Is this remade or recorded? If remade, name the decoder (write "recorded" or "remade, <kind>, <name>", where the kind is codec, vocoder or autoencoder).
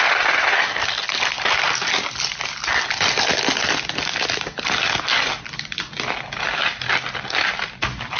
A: recorded